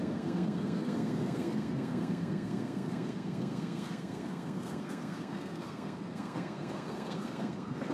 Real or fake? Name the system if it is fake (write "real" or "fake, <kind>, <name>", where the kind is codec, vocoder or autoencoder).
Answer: fake, codec, SNAC